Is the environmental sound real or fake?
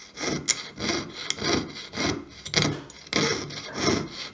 real